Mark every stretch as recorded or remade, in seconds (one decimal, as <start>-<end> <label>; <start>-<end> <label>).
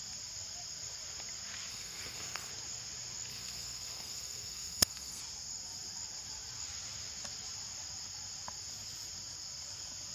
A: 0.0-1.7 recorded; 1.7-2.5 remade; 2.5-3.3 recorded; 3.3-5.2 remade; 5.2-10.1 recorded